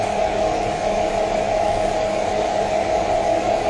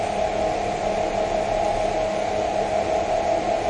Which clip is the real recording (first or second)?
second